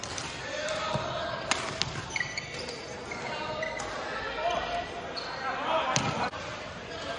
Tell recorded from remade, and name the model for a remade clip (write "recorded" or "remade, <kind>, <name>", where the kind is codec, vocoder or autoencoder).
recorded